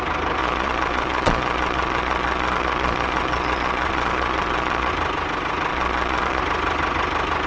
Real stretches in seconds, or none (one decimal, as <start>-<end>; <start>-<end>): 0.0-0.4; 4.9-5.7; 6.4-7.5